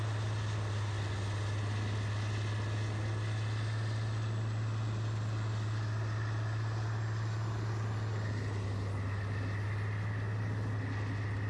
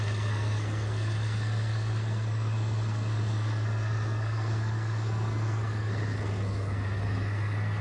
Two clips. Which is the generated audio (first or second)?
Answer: second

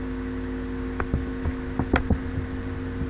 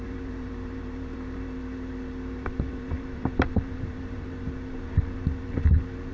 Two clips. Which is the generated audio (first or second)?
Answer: second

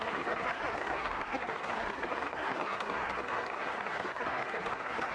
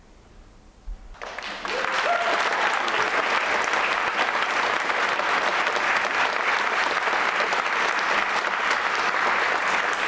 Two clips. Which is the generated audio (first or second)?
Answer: first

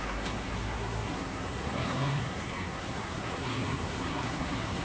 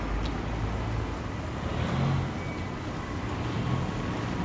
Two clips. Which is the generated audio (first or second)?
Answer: first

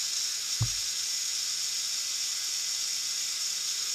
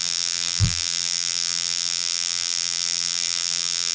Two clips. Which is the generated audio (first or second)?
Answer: second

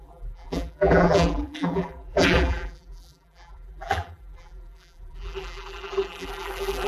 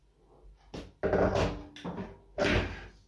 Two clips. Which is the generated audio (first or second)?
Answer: first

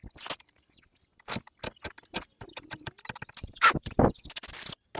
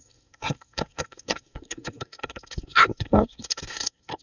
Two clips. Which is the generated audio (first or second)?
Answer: second